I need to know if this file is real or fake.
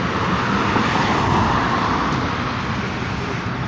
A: real